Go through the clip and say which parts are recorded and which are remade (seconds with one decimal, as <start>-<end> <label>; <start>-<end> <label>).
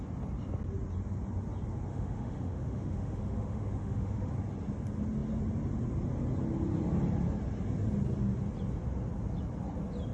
0.0-1.9 recorded; 1.9-4.3 remade; 4.3-10.1 recorded